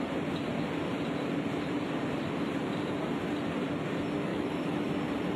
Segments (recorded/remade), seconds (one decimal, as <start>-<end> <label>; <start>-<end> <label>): 0.0-4.3 recorded; 4.3-4.9 remade; 4.9-5.4 recorded